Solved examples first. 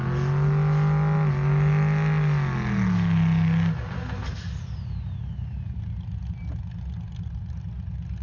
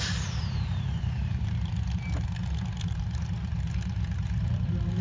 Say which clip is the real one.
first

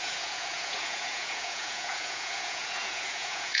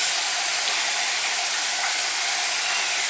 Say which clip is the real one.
second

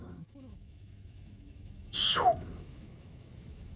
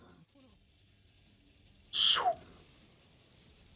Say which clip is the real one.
second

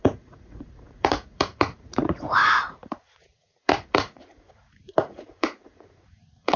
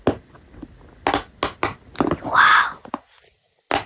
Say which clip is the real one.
second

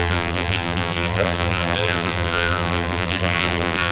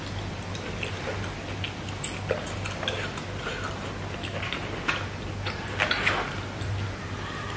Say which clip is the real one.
second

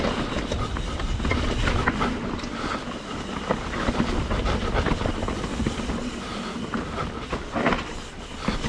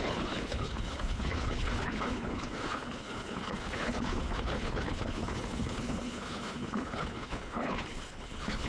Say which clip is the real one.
first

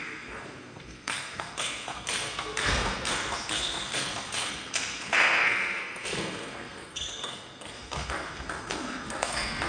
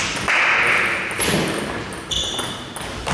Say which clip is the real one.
second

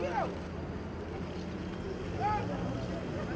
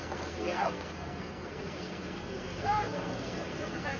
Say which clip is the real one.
first